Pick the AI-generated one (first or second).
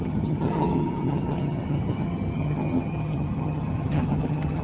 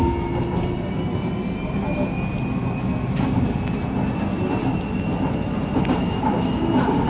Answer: first